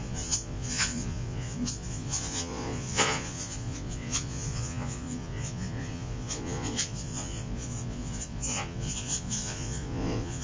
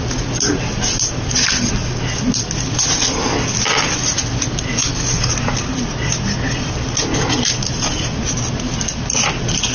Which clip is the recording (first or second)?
second